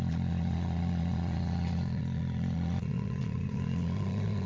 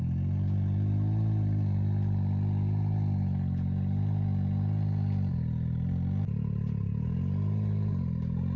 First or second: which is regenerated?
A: first